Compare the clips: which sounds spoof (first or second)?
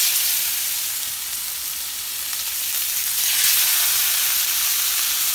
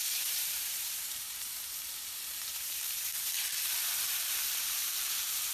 second